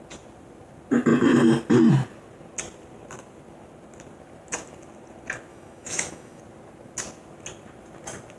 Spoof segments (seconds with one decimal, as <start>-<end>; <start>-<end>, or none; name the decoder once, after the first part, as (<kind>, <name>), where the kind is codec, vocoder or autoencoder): 5.5-6.4 (autoencoder, DAC-VAE)